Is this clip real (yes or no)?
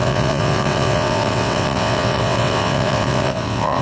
no